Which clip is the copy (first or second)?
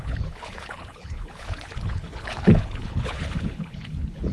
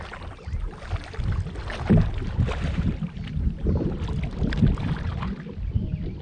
first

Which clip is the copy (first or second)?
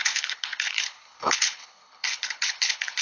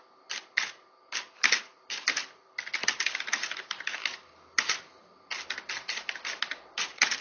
first